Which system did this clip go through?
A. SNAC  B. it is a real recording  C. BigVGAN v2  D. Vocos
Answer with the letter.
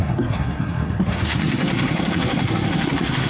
A